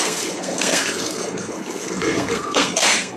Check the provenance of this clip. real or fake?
fake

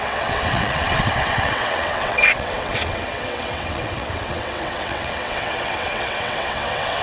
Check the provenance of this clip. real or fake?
fake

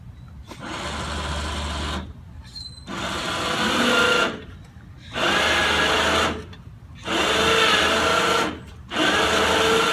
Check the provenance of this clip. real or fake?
real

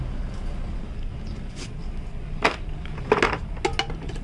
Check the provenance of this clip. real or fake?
real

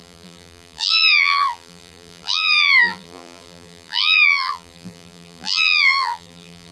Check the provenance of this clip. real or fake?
fake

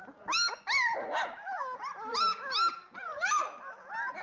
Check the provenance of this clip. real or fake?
real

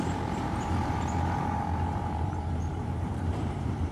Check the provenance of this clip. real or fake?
fake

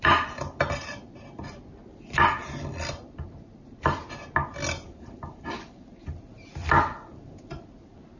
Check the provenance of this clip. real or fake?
real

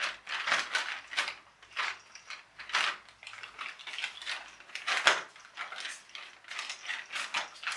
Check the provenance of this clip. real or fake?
real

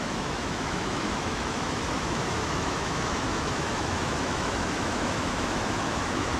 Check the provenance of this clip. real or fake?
fake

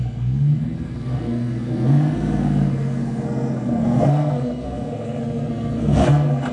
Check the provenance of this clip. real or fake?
fake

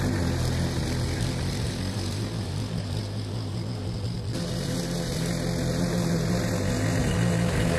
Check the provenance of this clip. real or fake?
real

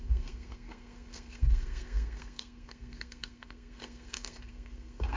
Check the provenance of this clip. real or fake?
fake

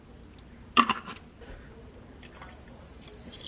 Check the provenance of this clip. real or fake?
real